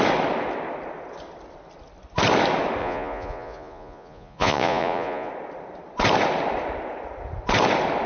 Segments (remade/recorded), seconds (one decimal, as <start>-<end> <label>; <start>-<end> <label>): 0.0-2.8 recorded; 2.8-5.3 remade; 5.3-8.1 recorded